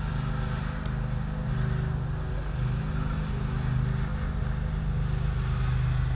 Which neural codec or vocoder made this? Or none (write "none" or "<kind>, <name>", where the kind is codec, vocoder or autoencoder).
none